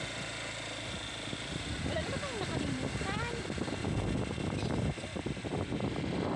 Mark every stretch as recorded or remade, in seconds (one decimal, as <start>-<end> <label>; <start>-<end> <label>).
0.0-6.4 recorded